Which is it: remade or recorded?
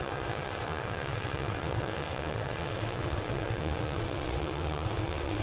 remade